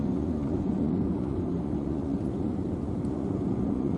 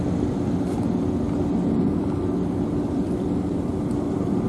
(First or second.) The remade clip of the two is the first